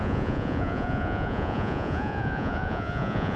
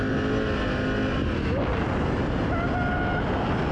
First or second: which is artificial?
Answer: first